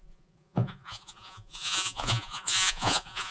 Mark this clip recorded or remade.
remade